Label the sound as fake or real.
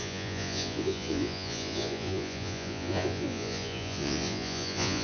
fake